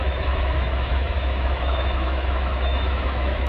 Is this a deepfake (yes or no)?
yes